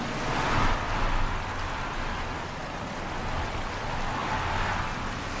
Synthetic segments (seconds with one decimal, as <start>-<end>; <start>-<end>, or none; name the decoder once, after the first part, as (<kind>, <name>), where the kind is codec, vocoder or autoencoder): none